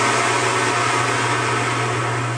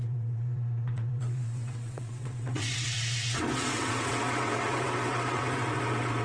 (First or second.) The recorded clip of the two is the first